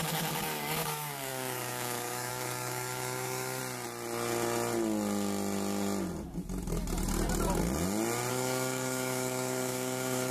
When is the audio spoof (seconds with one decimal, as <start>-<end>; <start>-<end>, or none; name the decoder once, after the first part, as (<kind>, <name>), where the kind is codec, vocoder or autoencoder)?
0.0-3.6 (codec, DAC); 8.3-10.3